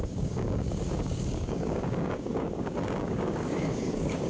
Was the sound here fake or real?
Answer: fake